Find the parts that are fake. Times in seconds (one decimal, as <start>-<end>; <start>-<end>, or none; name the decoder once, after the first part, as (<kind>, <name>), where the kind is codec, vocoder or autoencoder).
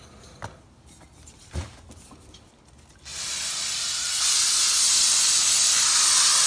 none